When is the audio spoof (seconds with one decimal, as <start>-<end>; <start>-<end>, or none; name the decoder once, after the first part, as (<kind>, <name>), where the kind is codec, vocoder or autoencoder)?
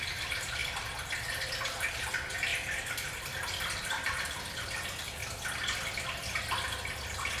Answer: 0.0-0.6 (vocoder, BigVGAN v2); 1.7-2.5; 3.9-5.2